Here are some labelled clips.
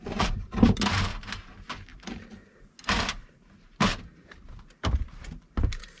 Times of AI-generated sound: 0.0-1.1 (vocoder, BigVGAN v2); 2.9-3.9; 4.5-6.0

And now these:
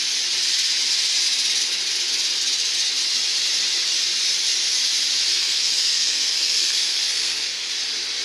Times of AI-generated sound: 5.3-7.7 (codec, SNAC)

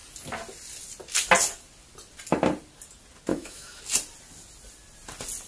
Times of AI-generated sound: 3.3-3.8 (autoencoder, DAC-VAE)

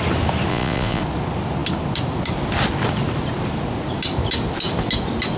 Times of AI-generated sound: 0.5-1.0 (vocoder, Vocos)

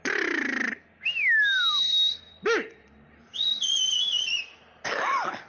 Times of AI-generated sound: none

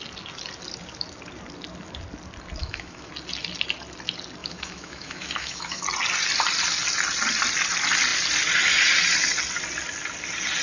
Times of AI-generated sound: 2.6-3.1 (autoencoder, DAC-VAE); 4.4-5.8

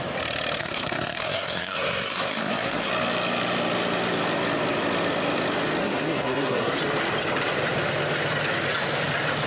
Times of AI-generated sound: 0.6-2.9 (codec, SNAC); 5.8-6.8

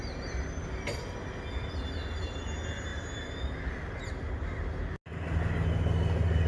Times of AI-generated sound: none